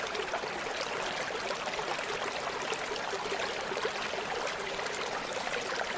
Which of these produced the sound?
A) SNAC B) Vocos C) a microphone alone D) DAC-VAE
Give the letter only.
C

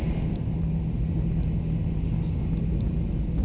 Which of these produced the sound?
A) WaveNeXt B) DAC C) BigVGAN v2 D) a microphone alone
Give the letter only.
D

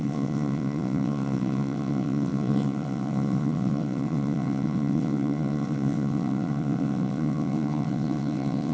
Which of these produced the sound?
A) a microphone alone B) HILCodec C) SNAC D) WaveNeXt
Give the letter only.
D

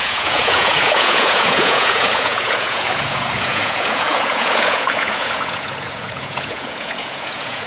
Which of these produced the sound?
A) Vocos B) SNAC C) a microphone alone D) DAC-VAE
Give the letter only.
A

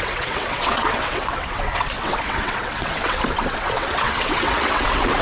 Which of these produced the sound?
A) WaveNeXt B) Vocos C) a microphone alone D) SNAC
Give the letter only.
A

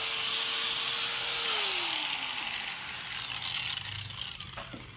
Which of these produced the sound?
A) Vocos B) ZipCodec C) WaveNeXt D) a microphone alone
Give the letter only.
D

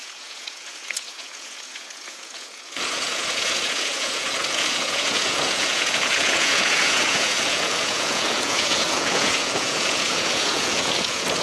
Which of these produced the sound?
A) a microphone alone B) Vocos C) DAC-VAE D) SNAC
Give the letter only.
B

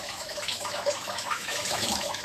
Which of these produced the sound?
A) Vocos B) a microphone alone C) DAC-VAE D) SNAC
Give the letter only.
C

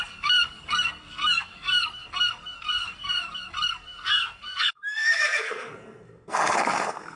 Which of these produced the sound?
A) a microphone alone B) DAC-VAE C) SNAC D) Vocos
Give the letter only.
C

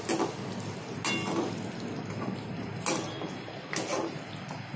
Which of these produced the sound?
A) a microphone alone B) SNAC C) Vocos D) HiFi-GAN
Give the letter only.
A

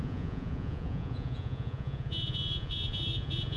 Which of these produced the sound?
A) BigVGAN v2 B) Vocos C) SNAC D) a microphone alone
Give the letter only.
B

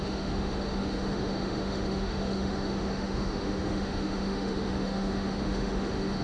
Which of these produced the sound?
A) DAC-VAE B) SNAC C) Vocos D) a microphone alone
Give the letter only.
A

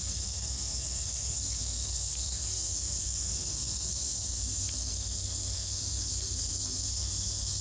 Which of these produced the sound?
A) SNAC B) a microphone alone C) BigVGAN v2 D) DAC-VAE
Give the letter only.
A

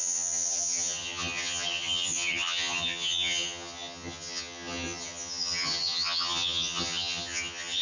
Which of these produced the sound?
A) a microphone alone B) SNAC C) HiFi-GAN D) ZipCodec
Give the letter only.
C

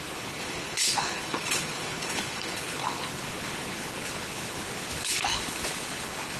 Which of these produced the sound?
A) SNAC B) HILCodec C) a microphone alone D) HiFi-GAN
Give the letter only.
B